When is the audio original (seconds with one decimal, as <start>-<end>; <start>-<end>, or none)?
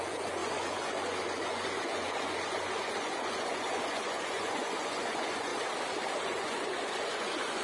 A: 5.5-6.2